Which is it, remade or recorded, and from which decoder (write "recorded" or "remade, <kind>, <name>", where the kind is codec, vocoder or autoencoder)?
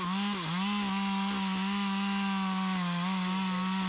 recorded